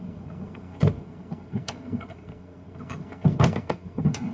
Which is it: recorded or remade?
remade